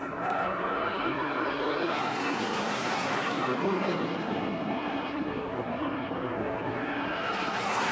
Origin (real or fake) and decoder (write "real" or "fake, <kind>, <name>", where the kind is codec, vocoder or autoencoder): fake, codec, SNAC